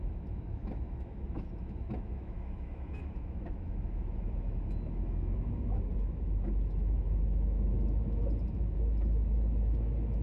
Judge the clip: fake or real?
fake